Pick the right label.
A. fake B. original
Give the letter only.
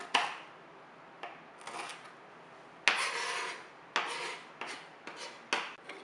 B